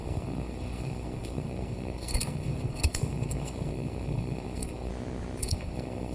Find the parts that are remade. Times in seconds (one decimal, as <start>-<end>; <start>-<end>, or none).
0.0-4.9; 5.4-6.1